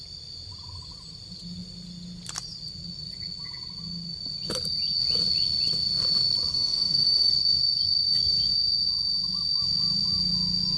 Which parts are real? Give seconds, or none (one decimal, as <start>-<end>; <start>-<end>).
0.0-6.5; 7.3-10.8

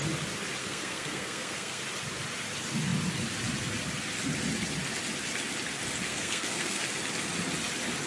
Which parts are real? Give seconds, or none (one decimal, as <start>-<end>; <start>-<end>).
0.0-0.6; 1.8-6.1; 6.8-8.1

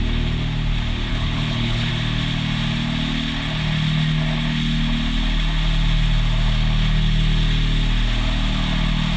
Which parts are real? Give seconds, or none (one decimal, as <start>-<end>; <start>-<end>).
0.0-1.1; 1.9-9.2

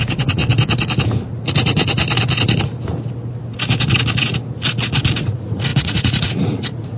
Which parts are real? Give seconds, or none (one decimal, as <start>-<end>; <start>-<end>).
0.4-1.3; 2.0-5.2

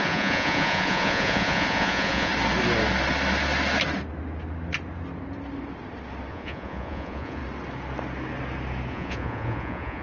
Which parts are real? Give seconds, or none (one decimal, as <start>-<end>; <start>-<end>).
2.3-6.3; 7.4-8.9

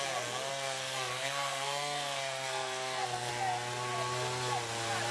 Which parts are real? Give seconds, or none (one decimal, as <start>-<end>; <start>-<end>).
0.0-0.5; 3.3-5.1